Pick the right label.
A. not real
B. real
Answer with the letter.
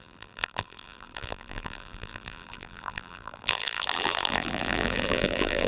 A